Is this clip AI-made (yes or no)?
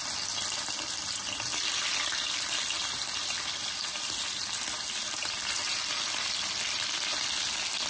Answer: no